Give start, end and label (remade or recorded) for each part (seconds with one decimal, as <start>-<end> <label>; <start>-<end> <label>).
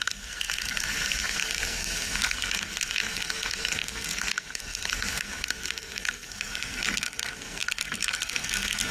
0.0-8.9 remade